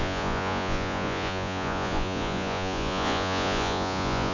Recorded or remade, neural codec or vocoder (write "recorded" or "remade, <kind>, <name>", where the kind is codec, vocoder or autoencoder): remade, vocoder, Vocos